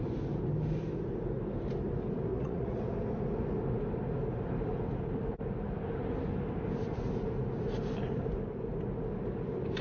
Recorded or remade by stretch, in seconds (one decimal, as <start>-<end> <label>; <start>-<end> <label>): 0.0-2.3 recorded; 2.3-2.8 remade; 2.8-9.8 recorded